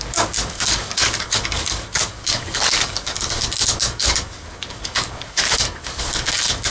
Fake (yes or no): yes